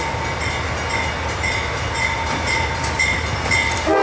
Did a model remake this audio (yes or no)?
no